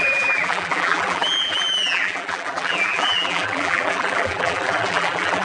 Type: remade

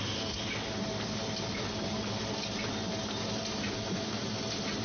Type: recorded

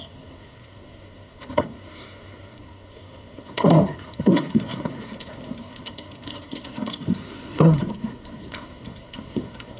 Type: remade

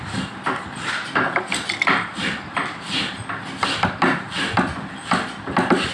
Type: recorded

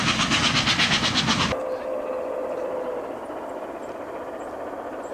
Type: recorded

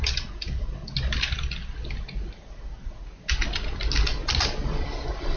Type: recorded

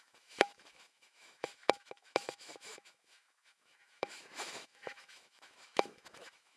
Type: remade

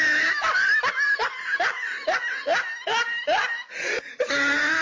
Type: recorded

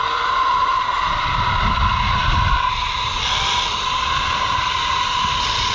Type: recorded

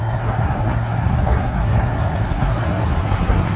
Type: remade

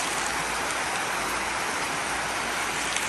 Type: recorded